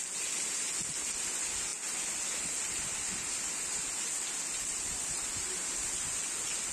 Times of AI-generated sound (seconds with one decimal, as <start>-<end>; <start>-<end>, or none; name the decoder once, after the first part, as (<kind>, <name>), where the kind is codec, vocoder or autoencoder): none